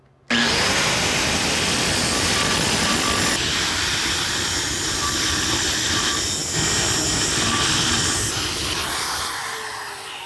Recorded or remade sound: recorded